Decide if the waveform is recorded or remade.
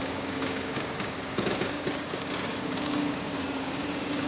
remade